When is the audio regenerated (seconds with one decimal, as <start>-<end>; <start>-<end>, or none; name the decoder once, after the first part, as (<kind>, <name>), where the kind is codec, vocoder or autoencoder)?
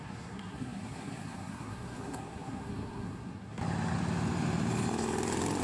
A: 0.0-3.6 (codec, SNAC)